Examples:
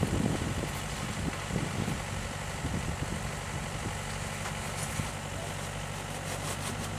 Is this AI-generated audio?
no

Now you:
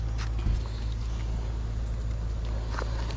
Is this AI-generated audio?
no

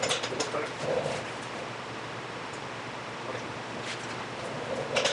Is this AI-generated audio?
no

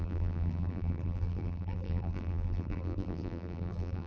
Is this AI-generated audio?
yes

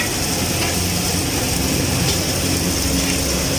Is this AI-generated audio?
no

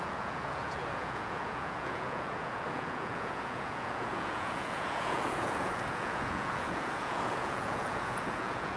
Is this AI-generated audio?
yes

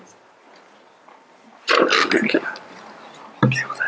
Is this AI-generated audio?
no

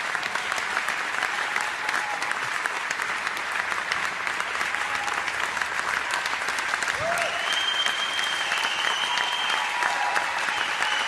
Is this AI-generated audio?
no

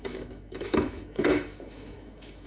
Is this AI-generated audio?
yes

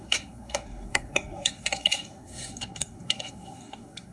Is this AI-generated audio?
yes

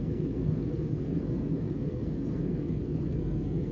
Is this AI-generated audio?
yes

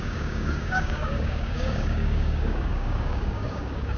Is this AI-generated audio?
yes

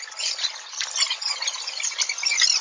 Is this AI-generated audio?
yes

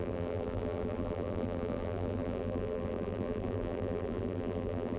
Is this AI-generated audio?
yes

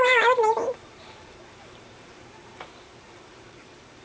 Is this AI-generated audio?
yes